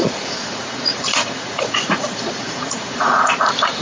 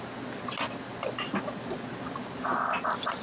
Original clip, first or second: second